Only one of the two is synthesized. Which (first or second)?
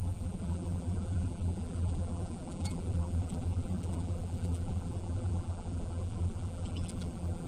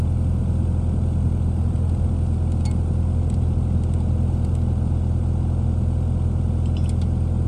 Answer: first